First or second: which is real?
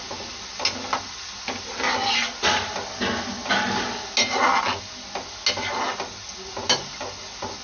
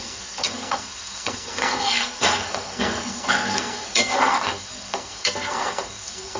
first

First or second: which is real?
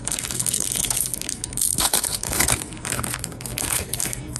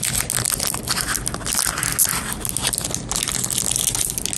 second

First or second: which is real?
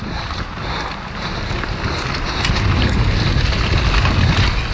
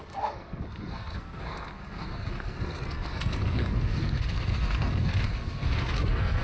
first